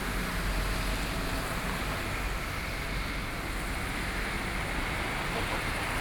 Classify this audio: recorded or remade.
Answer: recorded